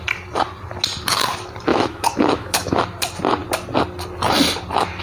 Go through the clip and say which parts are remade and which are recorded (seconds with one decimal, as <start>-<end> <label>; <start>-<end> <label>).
0.0-1.7 recorded; 1.7-2.8 remade; 2.8-5.0 recorded